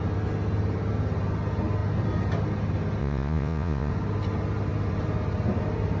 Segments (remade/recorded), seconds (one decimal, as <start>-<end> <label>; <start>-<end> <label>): 0.0-3.0 recorded; 3.0-3.9 remade; 3.9-6.0 recorded